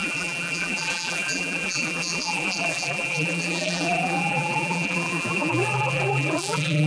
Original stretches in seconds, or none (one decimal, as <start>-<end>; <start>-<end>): none